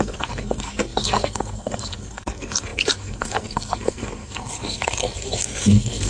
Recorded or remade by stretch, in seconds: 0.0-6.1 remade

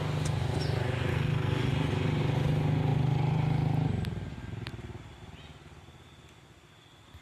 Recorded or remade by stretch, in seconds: 0.0-1.1 recorded; 1.1-1.7 remade; 1.7-7.2 recorded

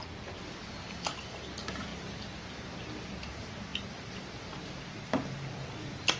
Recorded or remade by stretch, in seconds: 0.0-6.2 recorded

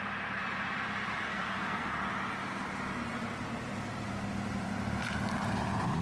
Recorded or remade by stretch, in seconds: 0.0-1.2 recorded; 1.2-1.9 remade; 1.9-6.0 recorded

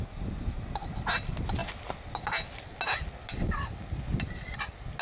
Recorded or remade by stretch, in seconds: 0.0-5.0 recorded

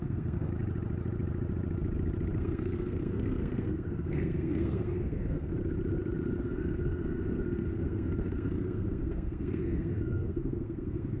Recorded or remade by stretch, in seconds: 0.0-0.5 remade; 0.5-2.4 recorded; 2.4-5.5 remade; 5.5-6.4 recorded; 6.4-11.2 remade